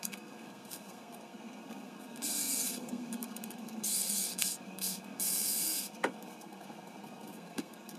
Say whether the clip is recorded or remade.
remade